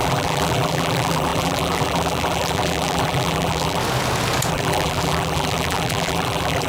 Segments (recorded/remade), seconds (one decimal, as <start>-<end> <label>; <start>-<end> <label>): 0.0-3.8 remade; 3.8-4.5 recorded; 4.5-6.7 remade